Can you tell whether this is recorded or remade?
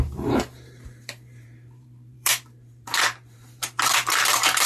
remade